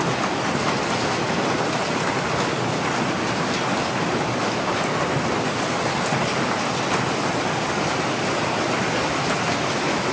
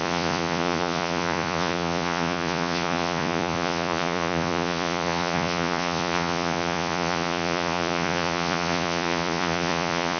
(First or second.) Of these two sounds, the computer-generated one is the second